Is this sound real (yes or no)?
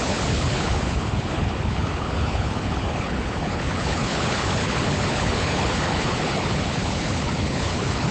no